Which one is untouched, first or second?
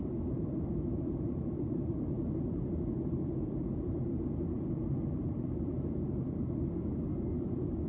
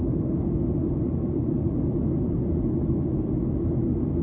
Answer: second